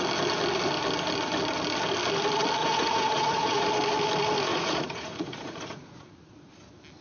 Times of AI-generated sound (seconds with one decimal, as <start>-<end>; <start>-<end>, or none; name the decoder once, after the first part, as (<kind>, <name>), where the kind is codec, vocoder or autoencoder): 2.6-3.7 (vocoder, Vocos); 4.5-6.6